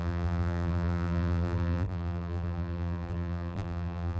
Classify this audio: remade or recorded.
remade